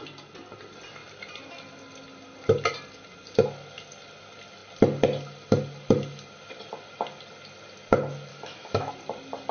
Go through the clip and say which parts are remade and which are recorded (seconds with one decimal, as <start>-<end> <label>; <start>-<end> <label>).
0.0-8.3 recorded; 8.3-8.9 remade; 8.9-9.5 recorded